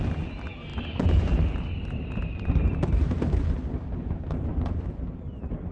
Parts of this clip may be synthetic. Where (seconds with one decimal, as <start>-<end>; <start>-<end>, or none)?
0.7-3.4; 4.5-5.7